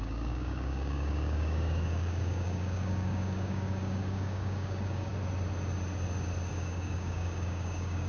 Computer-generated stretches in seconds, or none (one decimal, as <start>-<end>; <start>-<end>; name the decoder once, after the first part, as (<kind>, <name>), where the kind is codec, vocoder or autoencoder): 0.0-5.1 (codec, DAC); 6.5-8.1